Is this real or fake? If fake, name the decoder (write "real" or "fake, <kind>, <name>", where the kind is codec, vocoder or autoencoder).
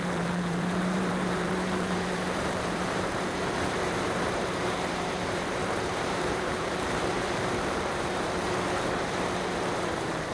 fake, vocoder, BigVGAN v2